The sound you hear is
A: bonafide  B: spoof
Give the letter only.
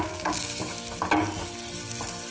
A